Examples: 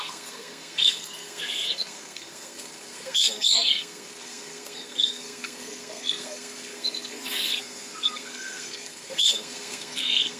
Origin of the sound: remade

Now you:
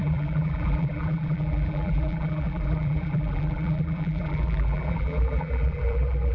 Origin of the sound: remade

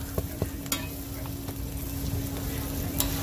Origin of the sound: recorded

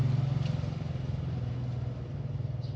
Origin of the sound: recorded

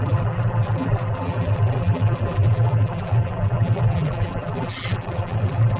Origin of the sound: remade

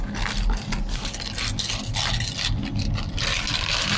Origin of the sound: recorded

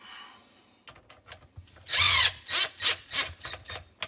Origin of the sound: recorded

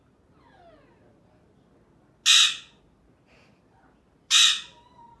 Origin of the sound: recorded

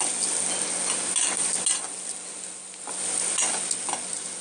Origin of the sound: recorded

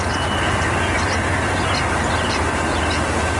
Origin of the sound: recorded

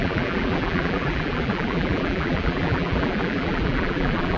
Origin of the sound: remade